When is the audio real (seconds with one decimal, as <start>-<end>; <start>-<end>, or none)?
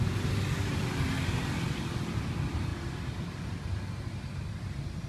0.0-5.1